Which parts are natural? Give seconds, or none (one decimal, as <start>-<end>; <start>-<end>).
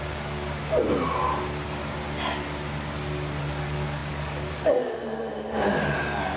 0.6-3.4; 5.0-6.4